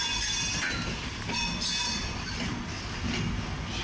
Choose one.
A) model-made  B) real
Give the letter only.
B